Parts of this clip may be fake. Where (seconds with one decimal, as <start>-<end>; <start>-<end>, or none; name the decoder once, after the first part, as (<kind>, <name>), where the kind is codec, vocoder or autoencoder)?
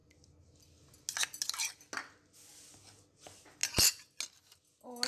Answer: none